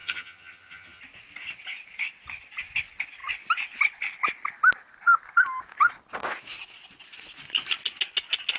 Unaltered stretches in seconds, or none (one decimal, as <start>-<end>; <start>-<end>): 1.0-8.6